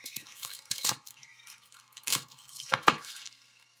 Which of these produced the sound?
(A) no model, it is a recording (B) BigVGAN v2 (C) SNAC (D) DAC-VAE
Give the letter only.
C